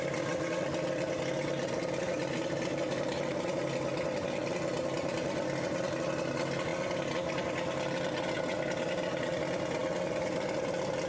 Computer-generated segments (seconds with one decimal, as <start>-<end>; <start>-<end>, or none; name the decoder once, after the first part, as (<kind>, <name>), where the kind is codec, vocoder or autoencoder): none